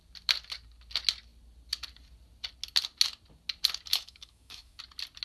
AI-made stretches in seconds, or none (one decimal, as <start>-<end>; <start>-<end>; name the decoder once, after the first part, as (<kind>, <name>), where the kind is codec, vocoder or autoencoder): 3.9-4.8 (autoencoder, DAC-VAE)